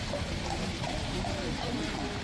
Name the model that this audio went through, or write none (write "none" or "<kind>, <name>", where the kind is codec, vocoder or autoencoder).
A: none